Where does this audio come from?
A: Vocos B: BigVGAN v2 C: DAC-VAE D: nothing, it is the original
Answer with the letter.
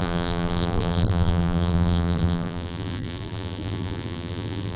B